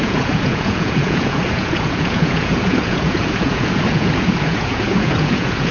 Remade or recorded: remade